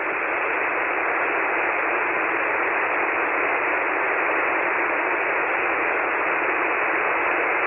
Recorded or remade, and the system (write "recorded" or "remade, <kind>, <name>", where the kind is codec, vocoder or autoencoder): recorded